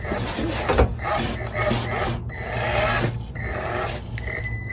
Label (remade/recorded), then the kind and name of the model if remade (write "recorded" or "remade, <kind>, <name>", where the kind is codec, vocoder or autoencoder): recorded